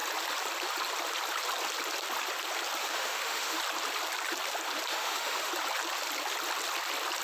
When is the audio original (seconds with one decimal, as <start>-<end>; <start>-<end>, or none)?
0.0-2.8; 3.6-4.9; 5.5-7.2